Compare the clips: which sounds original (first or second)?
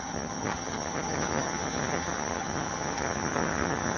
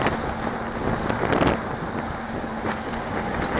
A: second